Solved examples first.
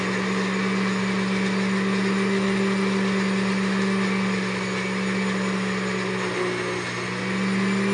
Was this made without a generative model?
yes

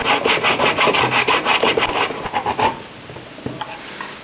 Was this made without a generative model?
yes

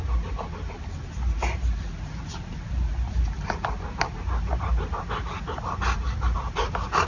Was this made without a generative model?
yes